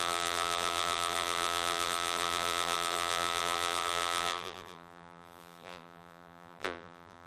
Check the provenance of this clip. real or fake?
fake